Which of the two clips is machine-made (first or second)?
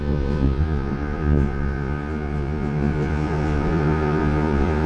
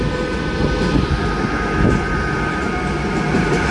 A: first